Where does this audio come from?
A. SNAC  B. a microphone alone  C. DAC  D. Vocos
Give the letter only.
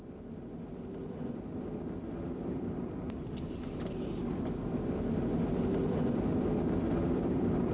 B